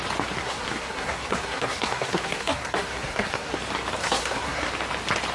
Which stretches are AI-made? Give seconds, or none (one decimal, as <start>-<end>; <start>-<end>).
0.4-3.6; 4.0-4.7